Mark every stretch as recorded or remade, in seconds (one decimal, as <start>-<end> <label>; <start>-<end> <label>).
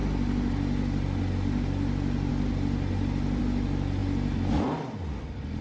0.0-5.6 recorded